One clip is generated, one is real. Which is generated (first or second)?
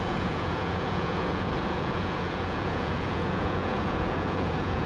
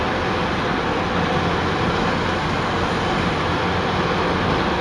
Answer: first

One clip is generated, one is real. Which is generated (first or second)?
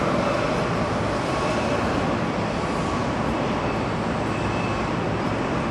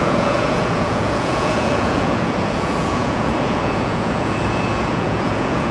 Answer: second